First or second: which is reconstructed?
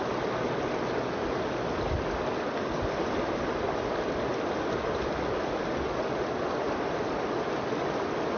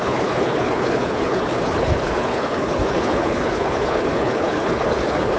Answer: second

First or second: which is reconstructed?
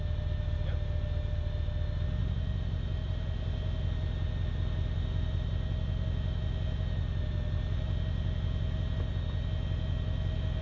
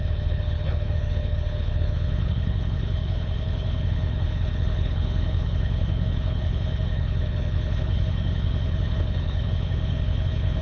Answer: second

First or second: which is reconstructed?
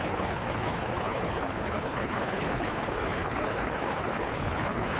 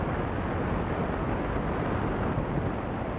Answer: first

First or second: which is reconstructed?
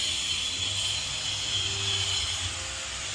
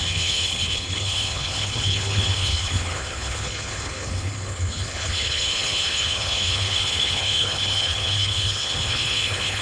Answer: second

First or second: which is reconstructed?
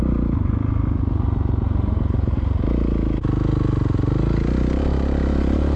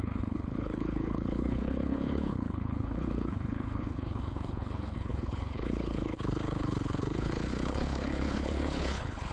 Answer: second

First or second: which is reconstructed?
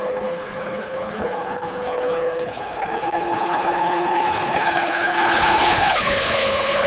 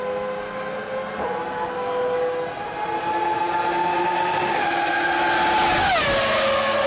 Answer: first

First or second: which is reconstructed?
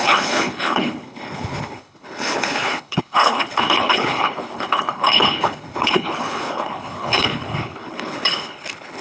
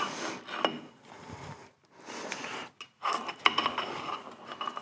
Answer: first